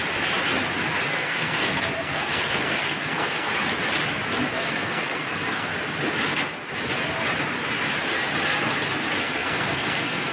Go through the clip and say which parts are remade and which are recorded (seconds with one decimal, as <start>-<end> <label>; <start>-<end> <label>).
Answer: 0.0-1.1 recorded; 1.1-3.5 remade; 3.5-4.5 recorded; 4.5-5.7 remade; 5.7-9.2 recorded; 9.2-10.3 remade